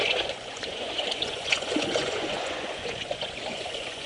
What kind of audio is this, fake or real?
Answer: fake